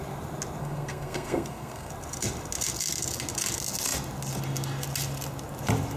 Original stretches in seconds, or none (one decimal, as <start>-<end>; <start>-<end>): 0.0-0.6; 1.9-6.0